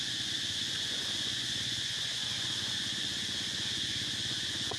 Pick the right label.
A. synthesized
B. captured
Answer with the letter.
A